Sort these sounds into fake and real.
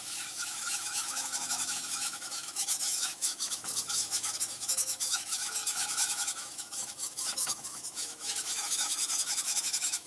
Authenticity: fake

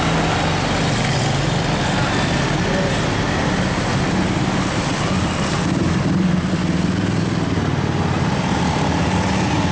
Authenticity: real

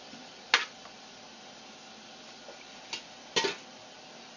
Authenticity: real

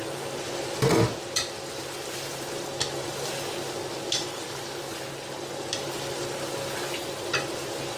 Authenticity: real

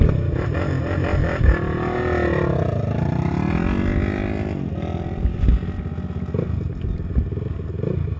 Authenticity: real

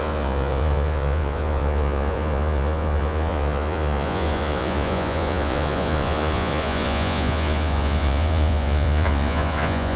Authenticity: fake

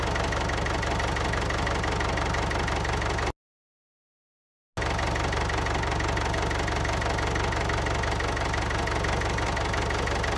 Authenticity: real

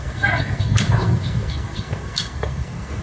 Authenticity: fake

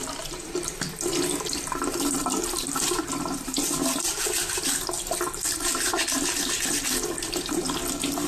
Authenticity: real